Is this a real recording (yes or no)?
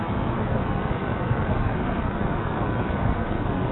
no